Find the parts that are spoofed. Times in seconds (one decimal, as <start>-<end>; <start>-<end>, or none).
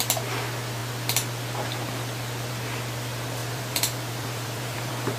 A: 3.4-5.2